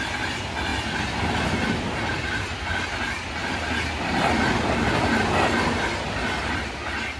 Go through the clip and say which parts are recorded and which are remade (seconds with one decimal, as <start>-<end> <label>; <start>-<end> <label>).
0.0-7.2 recorded